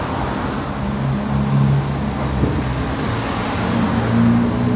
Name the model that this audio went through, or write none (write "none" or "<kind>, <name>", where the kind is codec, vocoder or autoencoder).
none